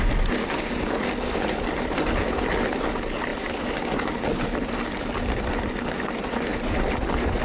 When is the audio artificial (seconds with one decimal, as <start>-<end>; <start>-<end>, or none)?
3.3-3.8; 6.5-7.4